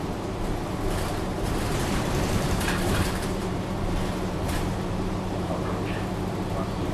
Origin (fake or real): fake